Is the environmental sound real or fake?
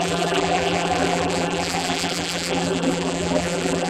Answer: fake